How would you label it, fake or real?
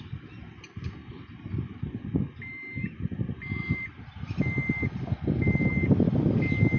real